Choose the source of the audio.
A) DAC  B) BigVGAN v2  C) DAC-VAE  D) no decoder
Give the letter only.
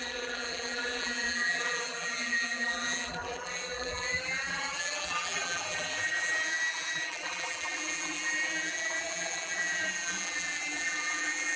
B